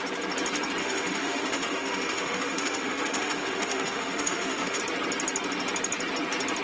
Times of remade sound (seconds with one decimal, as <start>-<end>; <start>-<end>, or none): 0.8-4.8